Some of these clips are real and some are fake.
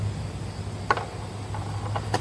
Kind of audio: real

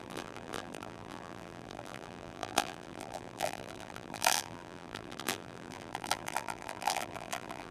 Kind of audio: fake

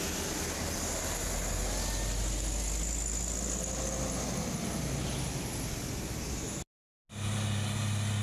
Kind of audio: real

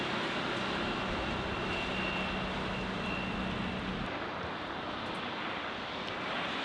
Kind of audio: real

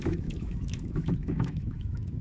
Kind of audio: fake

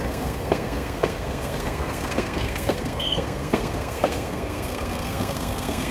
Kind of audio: fake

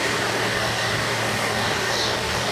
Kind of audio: fake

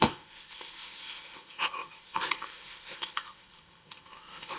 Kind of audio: fake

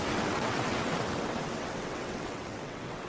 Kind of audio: fake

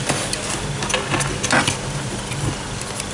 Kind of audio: real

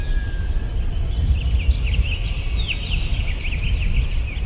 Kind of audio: real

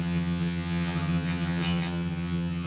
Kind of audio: fake